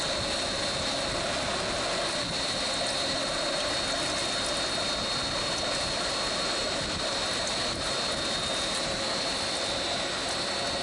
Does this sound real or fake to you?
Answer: real